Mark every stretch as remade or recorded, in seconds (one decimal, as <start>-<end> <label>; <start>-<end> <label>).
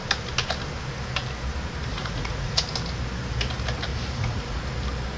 0.0-1.9 recorded; 1.9-2.6 remade; 2.6-3.9 recorded; 3.9-4.6 remade; 4.6-5.2 recorded